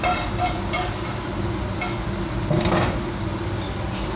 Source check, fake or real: real